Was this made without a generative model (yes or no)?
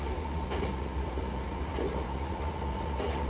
no